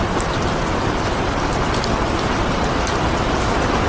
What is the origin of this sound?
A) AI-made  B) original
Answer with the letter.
B